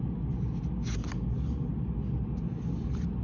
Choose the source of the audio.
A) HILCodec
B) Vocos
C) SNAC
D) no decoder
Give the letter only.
D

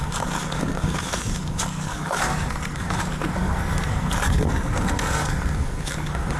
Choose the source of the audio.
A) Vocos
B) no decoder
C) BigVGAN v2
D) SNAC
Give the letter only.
D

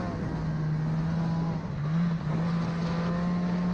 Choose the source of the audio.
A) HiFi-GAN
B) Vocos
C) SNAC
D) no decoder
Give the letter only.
D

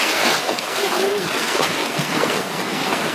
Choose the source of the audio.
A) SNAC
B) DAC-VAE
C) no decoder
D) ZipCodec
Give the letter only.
A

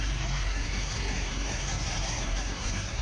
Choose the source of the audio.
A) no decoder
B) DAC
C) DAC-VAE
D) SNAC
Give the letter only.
D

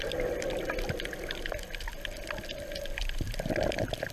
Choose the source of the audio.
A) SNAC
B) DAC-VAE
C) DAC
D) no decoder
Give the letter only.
D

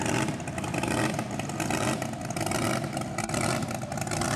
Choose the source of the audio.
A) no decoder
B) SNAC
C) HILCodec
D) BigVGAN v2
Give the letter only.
A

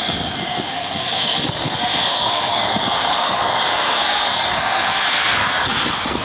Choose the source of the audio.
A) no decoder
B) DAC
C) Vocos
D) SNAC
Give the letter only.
D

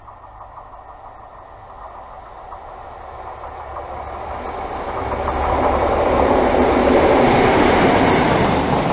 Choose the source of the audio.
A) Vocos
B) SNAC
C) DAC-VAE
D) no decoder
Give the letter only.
D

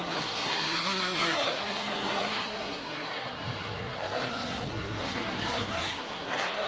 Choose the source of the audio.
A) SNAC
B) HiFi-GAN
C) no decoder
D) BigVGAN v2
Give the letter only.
A